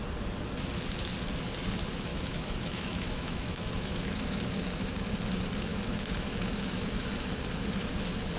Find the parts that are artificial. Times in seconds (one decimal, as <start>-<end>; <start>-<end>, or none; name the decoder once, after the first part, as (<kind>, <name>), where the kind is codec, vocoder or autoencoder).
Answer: 2.1-4.9 (autoencoder, DAC-VAE); 5.7-7.1